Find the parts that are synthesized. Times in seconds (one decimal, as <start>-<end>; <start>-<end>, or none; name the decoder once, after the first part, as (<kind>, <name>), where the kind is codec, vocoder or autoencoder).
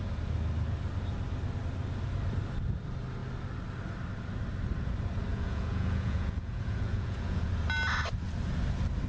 5.3-7.5 (vocoder, Vocos)